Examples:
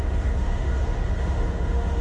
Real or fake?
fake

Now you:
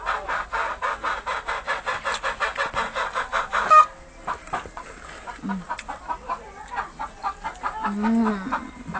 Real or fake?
real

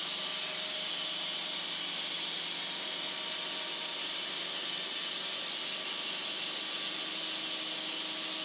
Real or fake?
real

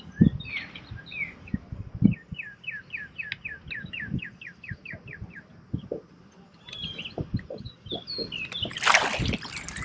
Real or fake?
real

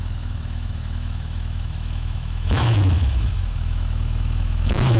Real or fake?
fake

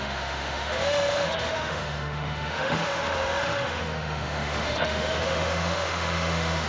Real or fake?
fake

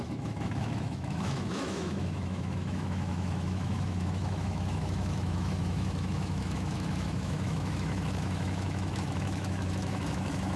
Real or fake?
fake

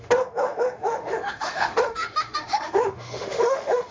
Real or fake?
fake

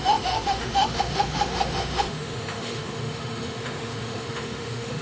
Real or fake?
fake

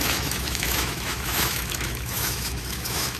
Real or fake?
fake